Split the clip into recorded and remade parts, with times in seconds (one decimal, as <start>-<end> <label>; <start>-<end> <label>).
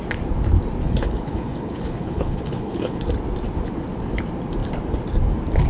0.0-0.8 recorded; 0.8-3.0 remade; 3.0-5.7 recorded